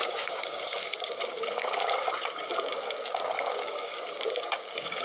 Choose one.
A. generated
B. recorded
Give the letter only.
A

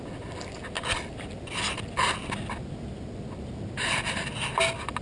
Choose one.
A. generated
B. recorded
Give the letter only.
B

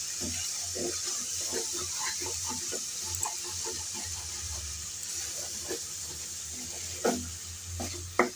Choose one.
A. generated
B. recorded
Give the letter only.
B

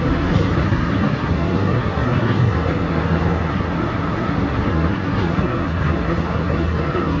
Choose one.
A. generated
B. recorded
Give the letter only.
A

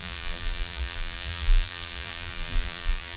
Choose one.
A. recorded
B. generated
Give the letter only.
B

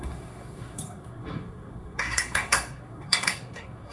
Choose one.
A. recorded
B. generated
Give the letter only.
B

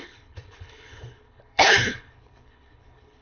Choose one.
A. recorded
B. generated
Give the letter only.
B